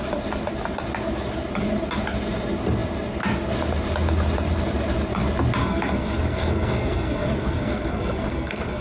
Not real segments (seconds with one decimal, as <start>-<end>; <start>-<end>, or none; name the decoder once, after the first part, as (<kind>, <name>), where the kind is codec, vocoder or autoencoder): 5.6-8.8 (codec, SNAC)